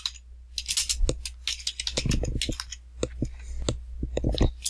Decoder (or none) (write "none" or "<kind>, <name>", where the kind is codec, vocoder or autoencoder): none